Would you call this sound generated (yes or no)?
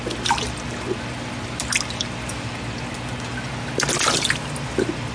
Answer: no